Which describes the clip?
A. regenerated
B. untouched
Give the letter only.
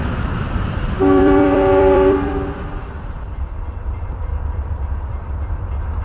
A